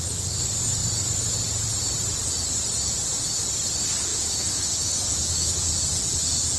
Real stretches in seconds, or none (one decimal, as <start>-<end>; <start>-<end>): 0.0-4.1; 5.6-6.6